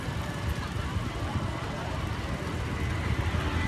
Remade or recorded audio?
recorded